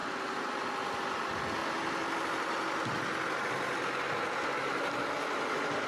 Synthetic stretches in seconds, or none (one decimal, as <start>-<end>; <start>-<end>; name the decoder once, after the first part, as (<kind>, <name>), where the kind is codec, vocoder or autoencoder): none